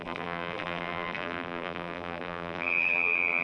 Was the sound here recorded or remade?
remade